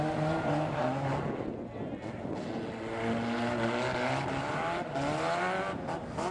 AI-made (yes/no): no